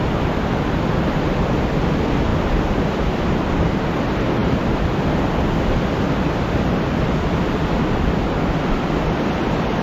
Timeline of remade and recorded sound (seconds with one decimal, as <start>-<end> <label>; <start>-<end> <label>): 0.0-9.8 recorded